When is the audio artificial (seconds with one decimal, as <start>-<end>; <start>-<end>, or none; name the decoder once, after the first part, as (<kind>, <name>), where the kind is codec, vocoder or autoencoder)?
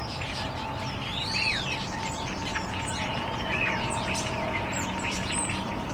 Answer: 2.5-5.9 (vocoder, Vocos)